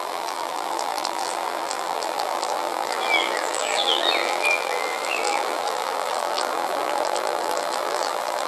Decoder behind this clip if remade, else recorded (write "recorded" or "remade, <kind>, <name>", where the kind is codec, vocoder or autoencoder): remade, vocoder, BigVGAN v2